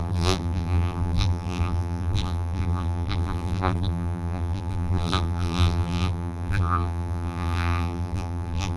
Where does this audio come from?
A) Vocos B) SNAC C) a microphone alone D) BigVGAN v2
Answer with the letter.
D